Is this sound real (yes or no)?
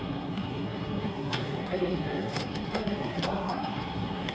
no